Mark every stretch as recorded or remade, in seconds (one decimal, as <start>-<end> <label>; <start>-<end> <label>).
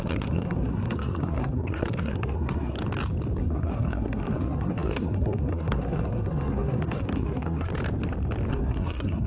0.0-2.8 remade; 2.8-3.4 recorded; 3.4-7.7 remade; 7.7-8.5 recorded; 8.5-9.3 remade